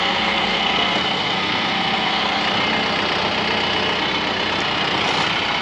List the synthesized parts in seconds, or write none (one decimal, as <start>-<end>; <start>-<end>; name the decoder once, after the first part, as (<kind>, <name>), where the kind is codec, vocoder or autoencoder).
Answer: 0.0-2.4 (codec, SNAC)